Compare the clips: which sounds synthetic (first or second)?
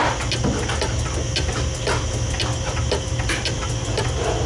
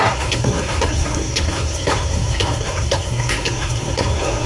second